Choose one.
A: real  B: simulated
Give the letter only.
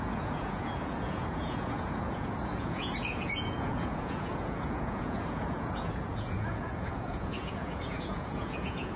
B